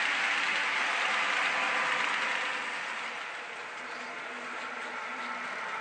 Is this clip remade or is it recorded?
recorded